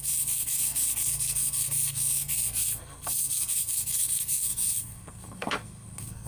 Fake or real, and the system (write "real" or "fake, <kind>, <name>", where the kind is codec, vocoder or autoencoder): fake, codec, SNAC